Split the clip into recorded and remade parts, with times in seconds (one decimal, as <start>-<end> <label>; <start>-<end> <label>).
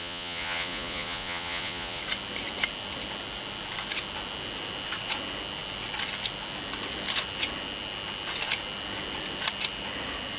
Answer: 0.0-2.0 remade; 2.0-10.4 recorded